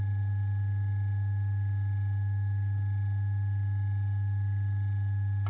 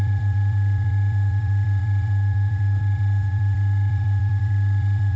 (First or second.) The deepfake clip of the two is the second